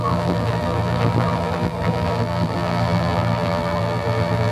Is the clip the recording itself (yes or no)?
no